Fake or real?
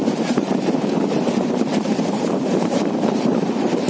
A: fake